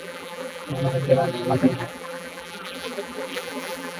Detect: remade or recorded remade